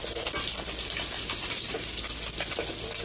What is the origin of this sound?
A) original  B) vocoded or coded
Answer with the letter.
A